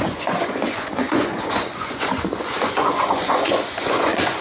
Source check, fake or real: fake